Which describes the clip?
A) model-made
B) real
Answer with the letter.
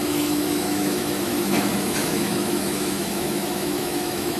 A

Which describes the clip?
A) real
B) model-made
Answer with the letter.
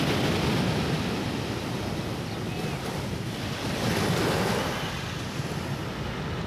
A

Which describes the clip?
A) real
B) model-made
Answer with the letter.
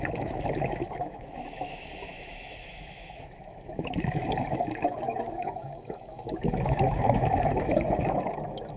B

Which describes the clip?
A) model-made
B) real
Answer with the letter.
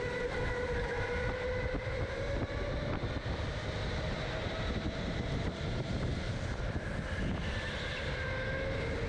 B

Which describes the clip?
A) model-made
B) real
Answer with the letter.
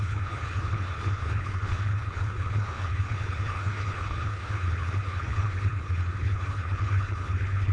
A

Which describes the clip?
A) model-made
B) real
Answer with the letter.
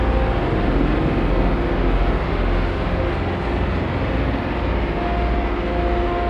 B